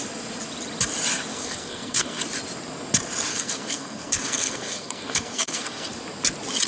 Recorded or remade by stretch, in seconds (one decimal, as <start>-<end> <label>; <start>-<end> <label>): 0.0-1.3 recorded; 1.3-2.2 remade; 2.2-3.3 recorded; 3.3-5.9 remade; 5.9-6.7 recorded